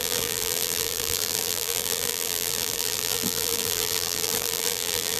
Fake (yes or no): yes